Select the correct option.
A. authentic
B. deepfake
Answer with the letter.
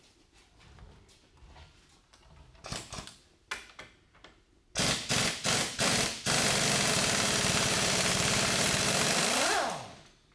A